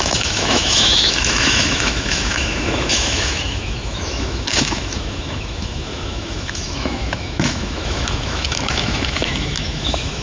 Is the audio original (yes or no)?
no